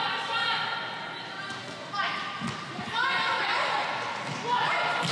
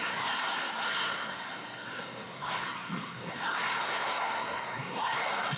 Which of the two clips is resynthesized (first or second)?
second